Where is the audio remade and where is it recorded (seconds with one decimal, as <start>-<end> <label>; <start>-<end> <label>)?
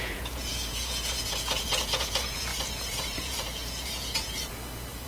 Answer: 0.0-5.1 remade